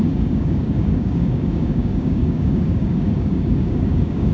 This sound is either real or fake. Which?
fake